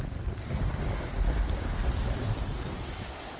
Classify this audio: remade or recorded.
recorded